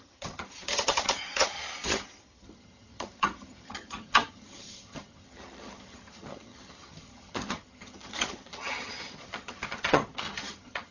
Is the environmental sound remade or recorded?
remade